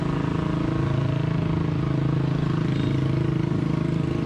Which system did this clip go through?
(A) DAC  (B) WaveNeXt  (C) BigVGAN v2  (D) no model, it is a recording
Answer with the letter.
D